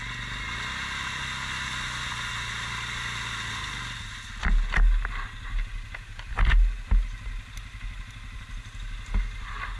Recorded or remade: recorded